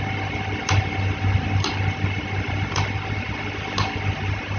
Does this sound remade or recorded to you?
recorded